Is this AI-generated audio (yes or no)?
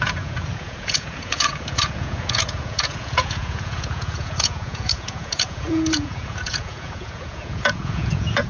yes